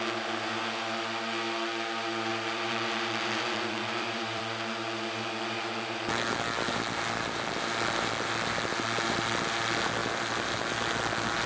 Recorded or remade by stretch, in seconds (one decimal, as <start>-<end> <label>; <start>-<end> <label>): 0.0-2.3 recorded; 2.3-4.4 remade; 4.4-10.0 recorded; 10.0-10.6 remade; 10.6-11.5 recorded